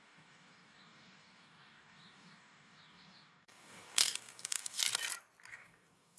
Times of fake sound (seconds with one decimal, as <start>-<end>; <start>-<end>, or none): 0.0-4.8; 5.5-6.2